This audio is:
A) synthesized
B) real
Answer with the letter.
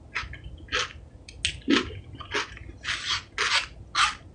B